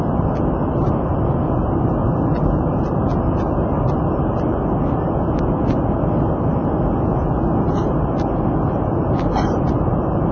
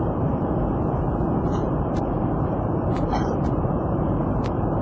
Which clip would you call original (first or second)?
first